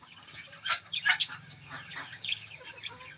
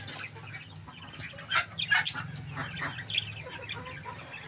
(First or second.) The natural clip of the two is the second